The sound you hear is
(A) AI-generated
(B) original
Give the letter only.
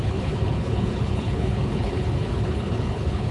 A